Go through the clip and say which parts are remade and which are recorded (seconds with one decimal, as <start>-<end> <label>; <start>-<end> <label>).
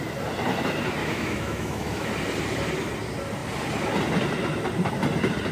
0.0-1.0 recorded; 1.0-2.1 remade; 2.1-5.5 recorded